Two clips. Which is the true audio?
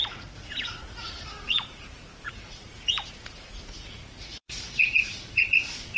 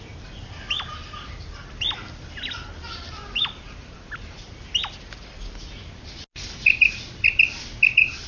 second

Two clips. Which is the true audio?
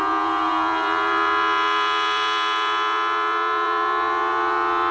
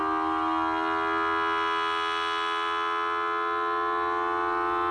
second